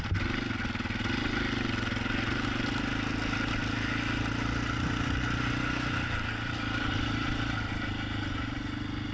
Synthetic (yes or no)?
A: no